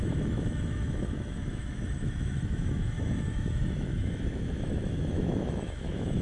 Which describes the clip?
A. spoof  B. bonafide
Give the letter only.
A